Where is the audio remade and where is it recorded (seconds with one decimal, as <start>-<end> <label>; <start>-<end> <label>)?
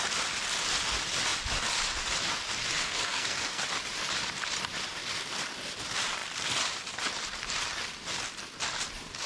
0.0-2.7 recorded; 2.7-3.6 remade; 3.6-9.3 recorded